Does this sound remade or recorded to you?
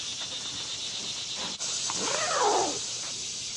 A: recorded